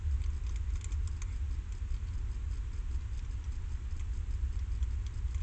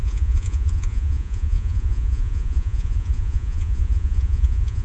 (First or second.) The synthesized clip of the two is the second